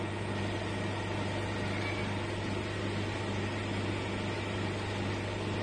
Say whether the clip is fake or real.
real